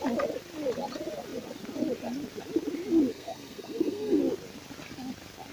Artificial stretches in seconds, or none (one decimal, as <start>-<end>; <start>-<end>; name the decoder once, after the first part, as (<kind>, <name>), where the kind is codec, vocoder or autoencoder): 3.1-4.2 (codec, SNAC)